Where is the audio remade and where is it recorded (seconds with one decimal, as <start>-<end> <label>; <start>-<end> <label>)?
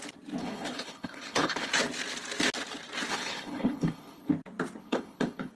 0.0-0.4 recorded; 0.4-1.7 remade; 1.7-3.1 recorded; 3.1-4.3 remade; 4.3-4.8 recorded; 4.8-5.5 remade